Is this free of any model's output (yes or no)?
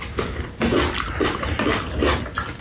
yes